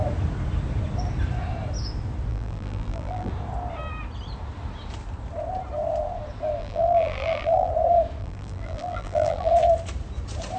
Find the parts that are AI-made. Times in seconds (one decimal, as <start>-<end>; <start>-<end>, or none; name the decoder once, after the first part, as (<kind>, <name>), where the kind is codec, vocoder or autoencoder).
2.3-3.3 (vocoder, BigVGAN v2); 6.6-7.7; 8.2-9.5

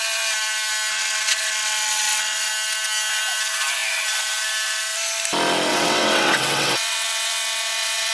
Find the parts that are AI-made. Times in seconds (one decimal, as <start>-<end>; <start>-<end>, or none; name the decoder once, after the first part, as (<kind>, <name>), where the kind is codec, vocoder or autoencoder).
0.9-2.5 (vocoder, WaveNeXt); 5.7-8.1

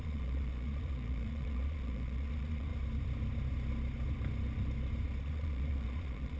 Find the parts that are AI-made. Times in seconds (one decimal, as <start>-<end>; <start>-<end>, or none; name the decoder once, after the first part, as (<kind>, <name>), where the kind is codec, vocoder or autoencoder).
0.0-2.7 (vocoder, Vocos); 5.2-6.4

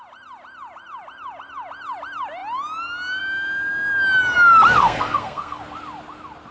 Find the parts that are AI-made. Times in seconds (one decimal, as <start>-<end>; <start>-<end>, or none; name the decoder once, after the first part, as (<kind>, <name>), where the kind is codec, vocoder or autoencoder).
4.8-5.6 (codec, SNAC)

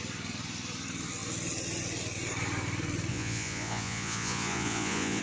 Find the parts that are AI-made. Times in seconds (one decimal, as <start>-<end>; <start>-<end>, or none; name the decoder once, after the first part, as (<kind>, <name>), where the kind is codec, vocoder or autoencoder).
3.1-5.2 (vocoder, Vocos)

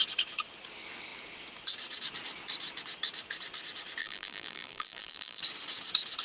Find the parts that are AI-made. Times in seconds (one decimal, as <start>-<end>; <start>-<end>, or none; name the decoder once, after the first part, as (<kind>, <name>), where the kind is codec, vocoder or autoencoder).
4.0-5.4 (vocoder, BigVGAN v2)